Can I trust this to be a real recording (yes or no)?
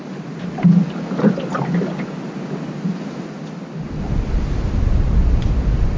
yes